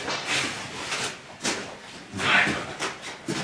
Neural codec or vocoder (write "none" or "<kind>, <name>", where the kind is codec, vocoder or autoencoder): none